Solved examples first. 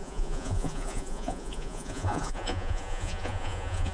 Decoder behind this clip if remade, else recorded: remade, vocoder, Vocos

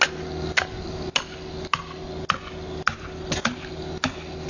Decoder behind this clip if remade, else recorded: recorded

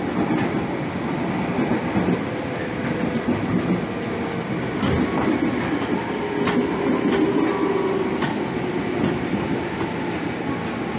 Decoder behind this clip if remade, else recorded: recorded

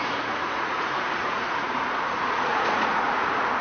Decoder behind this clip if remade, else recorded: remade, vocoder, Vocos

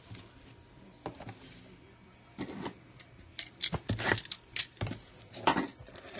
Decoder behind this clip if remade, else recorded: recorded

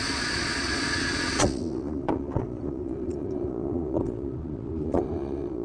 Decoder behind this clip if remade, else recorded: remade, vocoder, Vocos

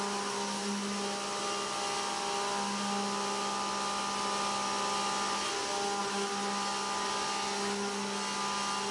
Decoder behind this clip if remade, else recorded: recorded